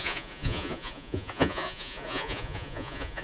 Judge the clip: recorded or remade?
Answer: remade